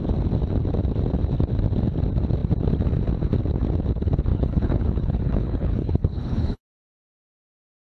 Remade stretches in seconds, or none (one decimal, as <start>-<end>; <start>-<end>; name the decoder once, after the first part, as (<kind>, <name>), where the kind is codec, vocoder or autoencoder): 4.3-6.6 (codec, HILCodec)